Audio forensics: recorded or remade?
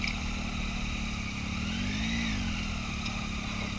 recorded